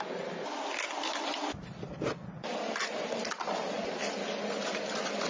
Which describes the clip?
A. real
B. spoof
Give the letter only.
A